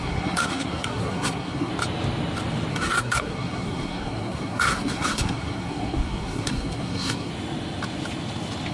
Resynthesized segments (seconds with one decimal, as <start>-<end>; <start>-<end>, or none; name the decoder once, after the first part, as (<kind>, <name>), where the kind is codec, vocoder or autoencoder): 0.0-1.7 (codec, SNAC); 2.7-7.3